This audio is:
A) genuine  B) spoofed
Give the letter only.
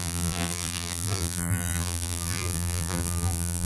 B